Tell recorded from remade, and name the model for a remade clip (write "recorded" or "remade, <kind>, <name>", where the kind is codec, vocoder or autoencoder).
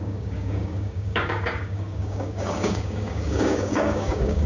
remade, codec, DAC